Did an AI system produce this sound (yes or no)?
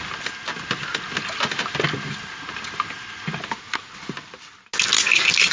no